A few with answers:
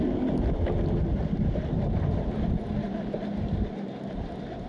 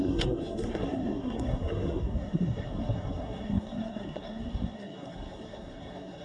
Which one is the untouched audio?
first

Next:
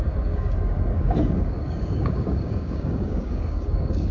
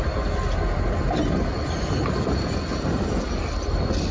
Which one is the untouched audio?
second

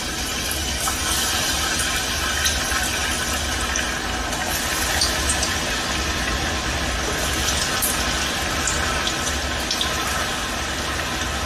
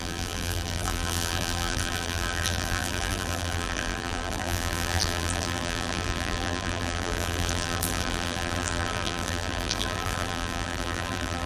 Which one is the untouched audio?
first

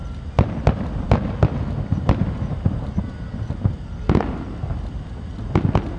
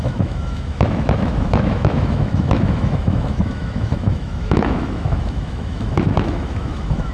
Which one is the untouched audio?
first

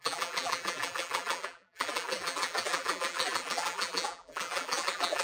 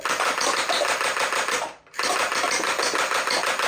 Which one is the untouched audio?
second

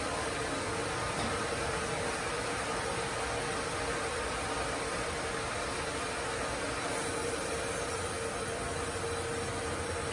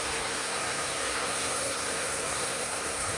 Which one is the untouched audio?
first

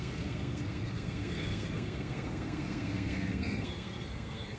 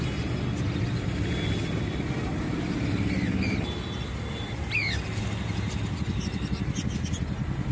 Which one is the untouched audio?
second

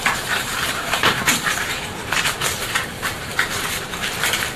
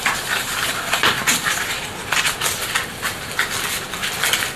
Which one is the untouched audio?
second